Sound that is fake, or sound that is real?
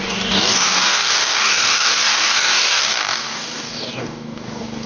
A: fake